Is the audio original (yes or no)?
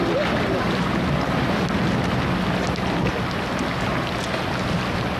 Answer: yes